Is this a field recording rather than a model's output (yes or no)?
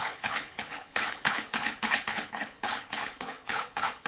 no